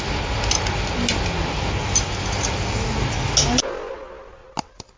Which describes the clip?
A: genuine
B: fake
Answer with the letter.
A